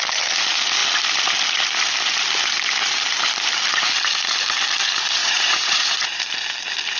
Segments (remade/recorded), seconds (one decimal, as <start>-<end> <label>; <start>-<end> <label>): 0.0-5.2 recorded; 5.2-6.2 remade; 6.2-7.0 recorded